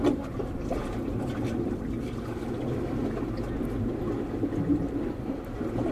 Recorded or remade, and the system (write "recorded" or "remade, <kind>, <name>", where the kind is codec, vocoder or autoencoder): recorded